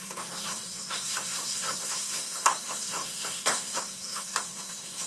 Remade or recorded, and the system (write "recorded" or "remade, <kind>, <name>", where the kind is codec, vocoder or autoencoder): remade, codec, SNAC